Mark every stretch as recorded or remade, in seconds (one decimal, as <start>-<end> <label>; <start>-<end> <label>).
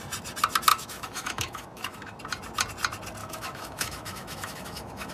0.0-0.7 recorded; 0.7-2.2 remade; 2.2-3.2 recorded; 3.2-5.1 remade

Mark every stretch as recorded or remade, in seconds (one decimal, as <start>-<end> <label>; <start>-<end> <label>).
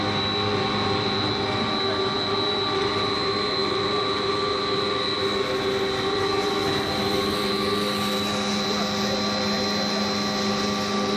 0.0-11.2 recorded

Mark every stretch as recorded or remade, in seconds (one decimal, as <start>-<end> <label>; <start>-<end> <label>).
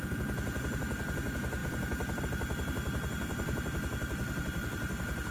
0.0-5.3 recorded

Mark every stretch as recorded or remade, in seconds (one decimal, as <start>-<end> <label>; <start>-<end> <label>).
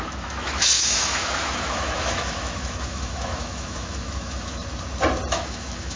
0.0-4.6 remade; 4.6-5.3 recorded; 5.3-6.0 remade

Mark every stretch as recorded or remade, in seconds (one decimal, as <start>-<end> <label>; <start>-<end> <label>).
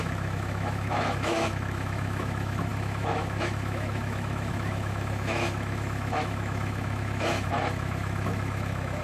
0.0-9.0 remade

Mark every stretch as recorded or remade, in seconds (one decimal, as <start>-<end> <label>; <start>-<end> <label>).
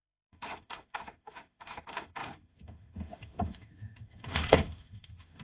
0.0-5.4 remade